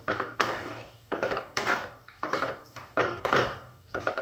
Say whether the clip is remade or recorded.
remade